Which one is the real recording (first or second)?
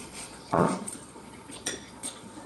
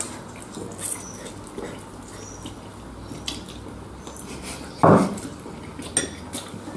second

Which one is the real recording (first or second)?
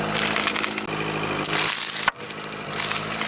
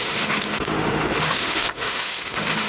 first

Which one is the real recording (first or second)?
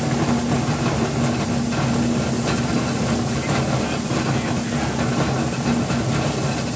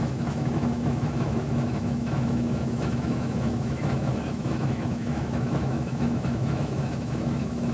first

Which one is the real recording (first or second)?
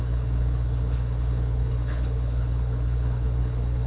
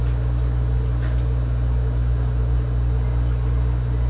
second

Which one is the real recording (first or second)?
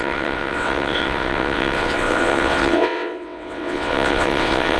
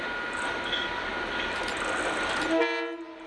second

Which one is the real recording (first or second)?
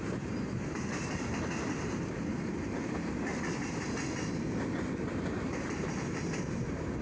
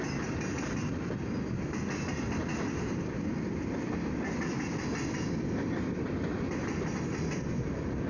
second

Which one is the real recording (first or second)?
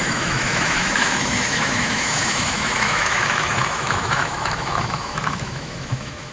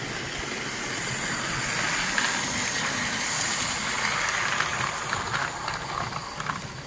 second